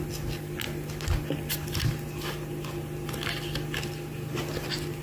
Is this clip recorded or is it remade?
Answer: recorded